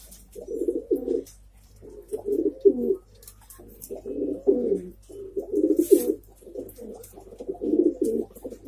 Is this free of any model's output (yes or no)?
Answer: yes